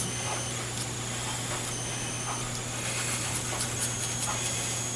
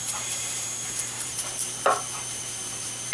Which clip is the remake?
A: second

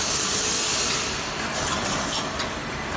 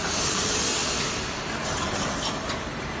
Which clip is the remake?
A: second